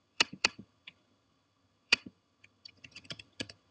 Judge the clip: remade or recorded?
remade